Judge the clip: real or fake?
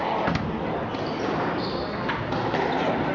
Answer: real